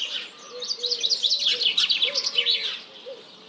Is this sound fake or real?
real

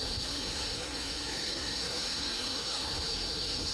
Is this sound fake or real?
fake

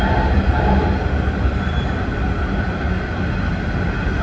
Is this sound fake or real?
real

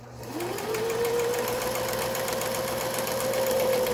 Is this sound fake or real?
real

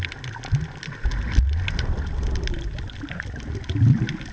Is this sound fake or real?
real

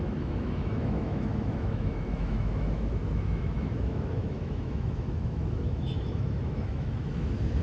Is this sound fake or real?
fake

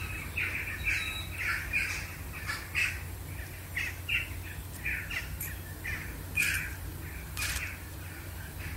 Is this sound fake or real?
real